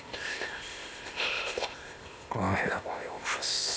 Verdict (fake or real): fake